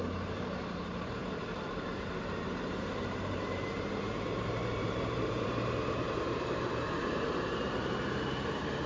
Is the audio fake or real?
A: fake